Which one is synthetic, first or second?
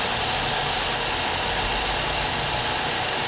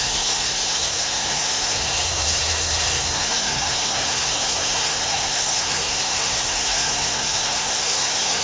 second